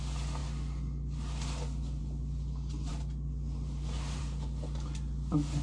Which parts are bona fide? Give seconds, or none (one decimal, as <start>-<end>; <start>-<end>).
0.0-5.6